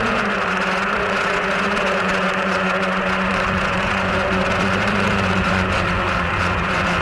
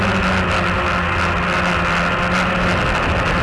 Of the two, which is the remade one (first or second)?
first